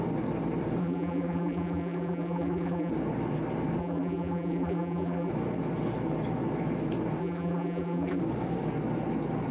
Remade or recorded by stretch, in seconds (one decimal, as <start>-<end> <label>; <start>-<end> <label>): 0.0-0.8 recorded; 0.8-2.9 remade; 2.9-3.8 recorded; 3.8-5.3 remade; 5.3-7.2 recorded; 7.2-8.2 remade; 8.2-9.5 recorded